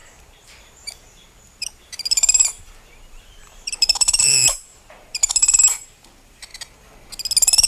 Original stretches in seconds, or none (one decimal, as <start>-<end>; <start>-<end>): 6.5-7.7